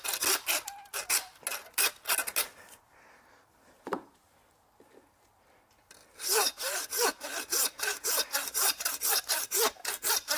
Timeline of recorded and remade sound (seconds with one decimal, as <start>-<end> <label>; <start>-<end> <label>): 0.0-3.4 recorded; 3.4-4.3 remade; 4.3-6.0 recorded; 6.0-9.9 remade; 9.9-10.4 recorded